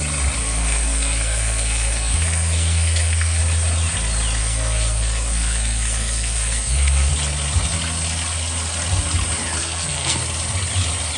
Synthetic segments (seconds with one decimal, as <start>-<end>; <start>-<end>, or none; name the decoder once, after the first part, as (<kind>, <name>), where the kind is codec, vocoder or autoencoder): 0.4-3.4 (codec, SNAC); 4.4-7.1; 9.6-10.2

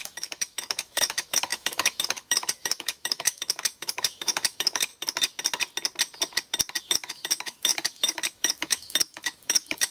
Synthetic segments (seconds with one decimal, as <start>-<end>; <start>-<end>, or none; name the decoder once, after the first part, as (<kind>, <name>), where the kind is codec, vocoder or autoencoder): 0.0-4.9 (autoencoder, DAC-VAE); 6.8-9.9

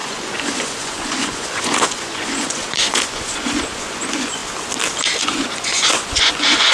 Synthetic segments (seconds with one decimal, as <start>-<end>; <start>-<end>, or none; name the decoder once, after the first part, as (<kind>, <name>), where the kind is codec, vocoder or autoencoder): 0.0-4.4 (vocoder, Vocos); 5.2-6.7